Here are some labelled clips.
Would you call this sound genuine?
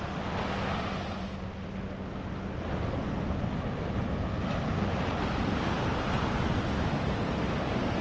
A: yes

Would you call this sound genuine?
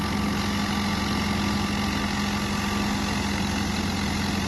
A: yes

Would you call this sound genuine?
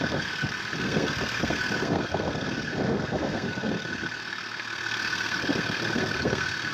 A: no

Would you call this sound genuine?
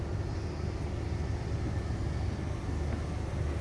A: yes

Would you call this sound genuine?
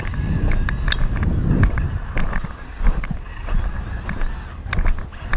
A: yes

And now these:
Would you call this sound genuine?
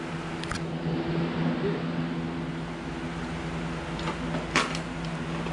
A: yes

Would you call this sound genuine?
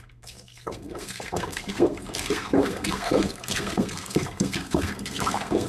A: no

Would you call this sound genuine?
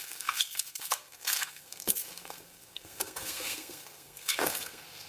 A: no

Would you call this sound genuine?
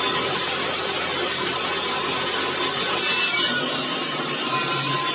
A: yes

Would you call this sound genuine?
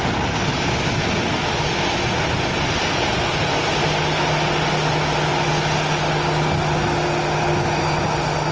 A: yes